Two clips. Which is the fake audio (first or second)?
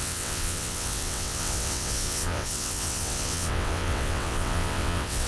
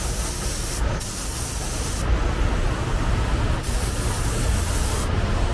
first